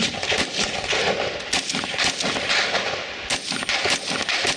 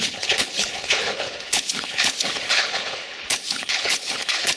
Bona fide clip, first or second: first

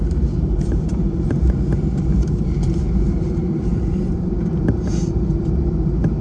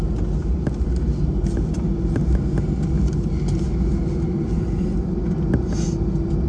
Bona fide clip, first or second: second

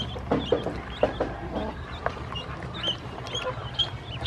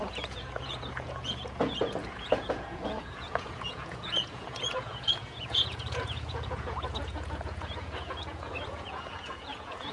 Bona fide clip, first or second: first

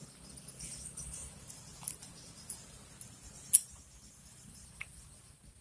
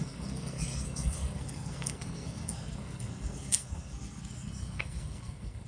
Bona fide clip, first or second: first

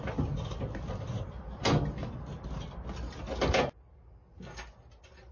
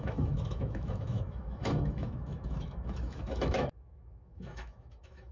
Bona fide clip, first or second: first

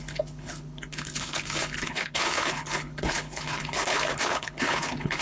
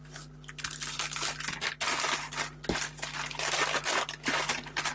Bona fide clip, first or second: second